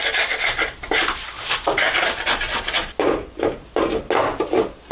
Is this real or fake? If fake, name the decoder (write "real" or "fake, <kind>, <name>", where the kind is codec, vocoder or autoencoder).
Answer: real